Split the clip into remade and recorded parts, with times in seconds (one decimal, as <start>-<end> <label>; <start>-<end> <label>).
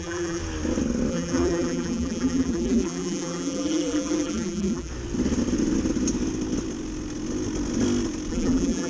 0.0-0.4 remade; 0.4-1.1 recorded; 1.1-4.9 remade; 4.9-8.3 recorded; 8.3-8.9 remade